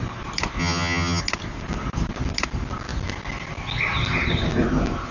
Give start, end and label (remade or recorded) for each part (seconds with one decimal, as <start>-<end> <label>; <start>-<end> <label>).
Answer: 0.0-0.6 recorded; 0.6-1.2 remade; 1.2-5.1 recorded